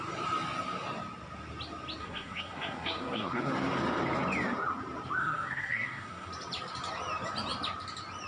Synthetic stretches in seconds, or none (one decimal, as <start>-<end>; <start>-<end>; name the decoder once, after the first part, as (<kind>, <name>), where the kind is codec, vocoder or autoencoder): 2.0-3.5 (codec, SNAC); 5.2-6.3

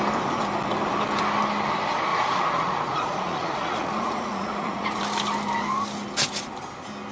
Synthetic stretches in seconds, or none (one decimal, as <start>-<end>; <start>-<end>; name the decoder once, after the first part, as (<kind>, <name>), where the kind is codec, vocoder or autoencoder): 2.1-5.0 (vocoder, Vocos)

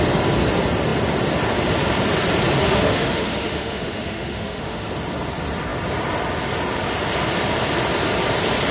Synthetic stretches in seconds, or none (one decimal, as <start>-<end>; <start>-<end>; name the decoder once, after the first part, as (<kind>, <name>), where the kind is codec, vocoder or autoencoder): 2.6-4.9 (autoencoder, DAC-VAE)

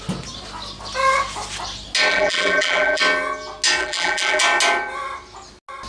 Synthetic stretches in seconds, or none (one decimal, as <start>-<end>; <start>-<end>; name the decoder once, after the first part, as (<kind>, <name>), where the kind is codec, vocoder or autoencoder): 2.1-3.0 (vocoder, BigVGAN v2); 3.8-4.4

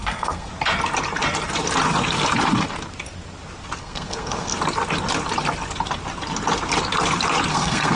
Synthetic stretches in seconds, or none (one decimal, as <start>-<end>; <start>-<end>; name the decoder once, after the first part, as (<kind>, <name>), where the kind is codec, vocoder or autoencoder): 0.0-0.5 (codec, SNAC); 3.8-4.5; 7.5-8.0

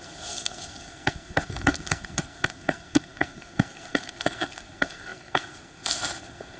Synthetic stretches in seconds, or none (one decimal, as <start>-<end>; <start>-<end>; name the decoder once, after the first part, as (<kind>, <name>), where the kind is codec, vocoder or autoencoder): 0.0-6.6 (codec, SNAC)

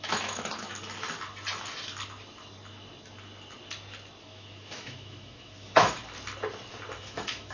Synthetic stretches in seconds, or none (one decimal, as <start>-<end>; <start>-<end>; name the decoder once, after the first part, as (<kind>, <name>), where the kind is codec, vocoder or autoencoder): 0.0-0.7 (autoencoder, DAC-VAE); 4.2-6.0; 7.0-7.5